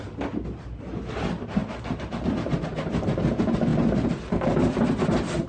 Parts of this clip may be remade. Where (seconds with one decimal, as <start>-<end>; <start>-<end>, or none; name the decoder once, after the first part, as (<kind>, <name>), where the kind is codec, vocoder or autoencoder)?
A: none